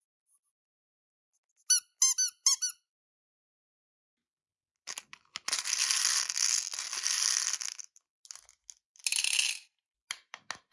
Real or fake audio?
real